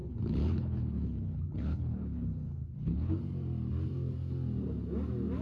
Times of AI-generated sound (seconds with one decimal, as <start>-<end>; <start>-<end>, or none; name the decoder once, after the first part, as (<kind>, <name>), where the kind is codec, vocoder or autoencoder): 0.0-3.2 (codec, HILCodec)